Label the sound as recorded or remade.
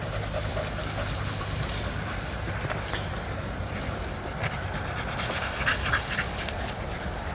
recorded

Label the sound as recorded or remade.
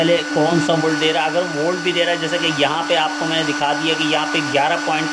recorded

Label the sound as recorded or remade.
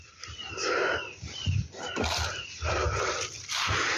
remade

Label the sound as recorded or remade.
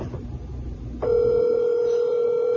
remade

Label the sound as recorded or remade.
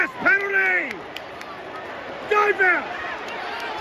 remade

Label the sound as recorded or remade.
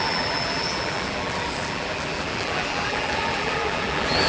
remade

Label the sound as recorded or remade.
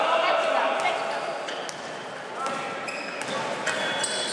recorded